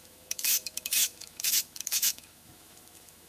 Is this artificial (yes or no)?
yes